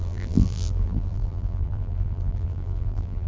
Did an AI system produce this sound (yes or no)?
yes